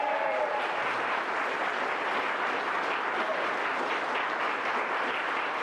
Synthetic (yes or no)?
no